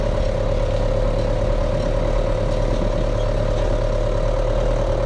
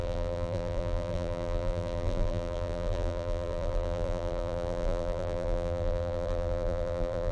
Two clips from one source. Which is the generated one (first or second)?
second